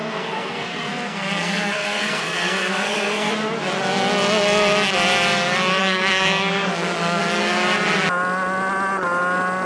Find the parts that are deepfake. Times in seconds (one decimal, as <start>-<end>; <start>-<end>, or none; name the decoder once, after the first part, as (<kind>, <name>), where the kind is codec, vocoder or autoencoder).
0.0-3.3 (codec, SNAC); 5.8-7.2